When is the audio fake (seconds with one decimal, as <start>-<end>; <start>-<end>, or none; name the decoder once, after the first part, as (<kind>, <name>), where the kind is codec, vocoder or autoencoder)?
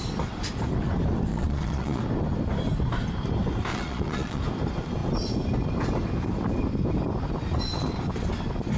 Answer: 1.3-2.0 (vocoder, Vocos); 3.7-4.4